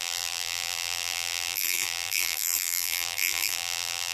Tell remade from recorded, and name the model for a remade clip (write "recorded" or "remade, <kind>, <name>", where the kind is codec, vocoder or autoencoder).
remade, vocoder, BigVGAN v2